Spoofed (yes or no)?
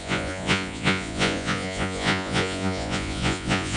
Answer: yes